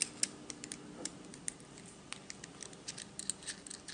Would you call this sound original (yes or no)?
yes